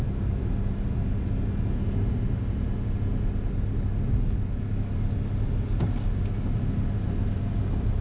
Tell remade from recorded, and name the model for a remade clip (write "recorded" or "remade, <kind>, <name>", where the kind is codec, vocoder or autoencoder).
recorded